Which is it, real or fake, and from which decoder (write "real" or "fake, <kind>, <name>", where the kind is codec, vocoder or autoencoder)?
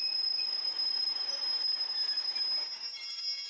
real